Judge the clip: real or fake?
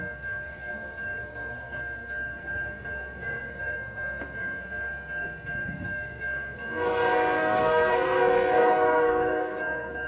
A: fake